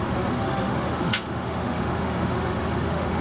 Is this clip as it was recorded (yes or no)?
no